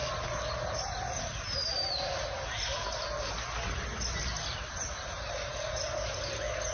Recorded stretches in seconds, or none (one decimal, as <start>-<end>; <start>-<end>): 0.0-6.7